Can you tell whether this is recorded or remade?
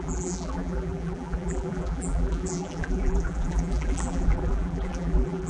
remade